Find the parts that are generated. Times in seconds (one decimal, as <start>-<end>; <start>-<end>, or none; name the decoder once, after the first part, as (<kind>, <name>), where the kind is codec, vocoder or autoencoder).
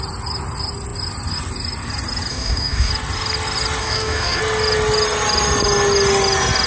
2.3-2.9 (codec, DAC); 3.8-4.4